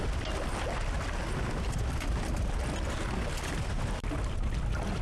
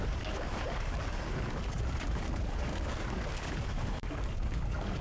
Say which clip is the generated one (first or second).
second